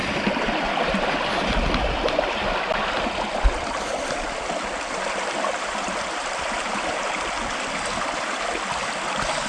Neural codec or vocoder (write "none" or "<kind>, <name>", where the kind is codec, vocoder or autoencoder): none